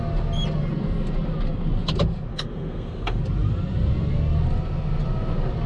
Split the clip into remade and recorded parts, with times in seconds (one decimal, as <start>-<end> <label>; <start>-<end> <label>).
0.0-2.3 recorded; 2.3-3.2 remade; 3.2-5.7 recorded